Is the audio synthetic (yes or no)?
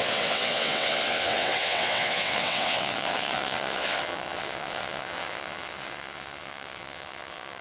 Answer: yes